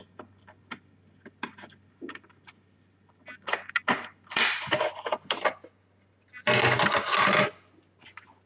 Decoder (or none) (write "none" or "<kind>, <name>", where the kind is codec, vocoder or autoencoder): none